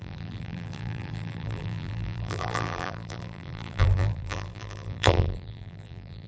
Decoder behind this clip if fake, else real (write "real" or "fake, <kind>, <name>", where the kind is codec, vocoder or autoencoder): fake, vocoder, BigVGAN v2